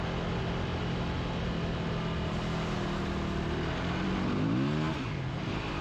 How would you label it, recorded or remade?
recorded